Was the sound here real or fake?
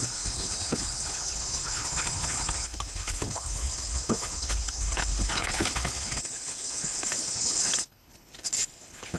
fake